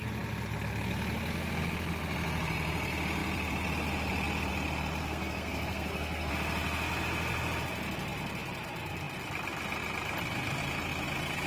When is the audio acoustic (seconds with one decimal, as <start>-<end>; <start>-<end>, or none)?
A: 0.0-5.0; 6.3-11.5